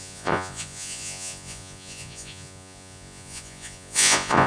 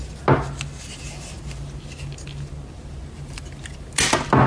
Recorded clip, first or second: second